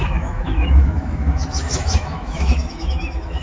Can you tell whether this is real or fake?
fake